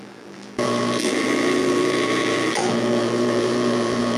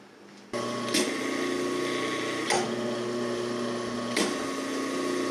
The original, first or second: second